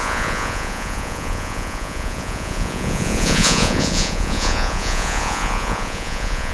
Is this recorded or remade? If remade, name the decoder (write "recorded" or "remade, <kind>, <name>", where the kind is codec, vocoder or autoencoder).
remade, vocoder, Vocos